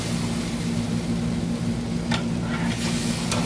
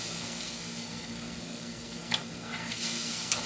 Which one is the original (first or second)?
first